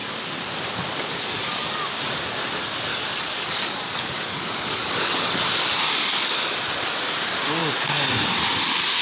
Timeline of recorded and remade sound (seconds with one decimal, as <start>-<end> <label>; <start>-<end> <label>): 0.0-2.9 recorded; 2.9-5.4 remade; 5.4-9.0 recorded